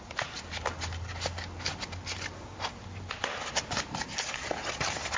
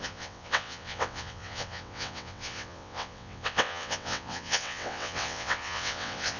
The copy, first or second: second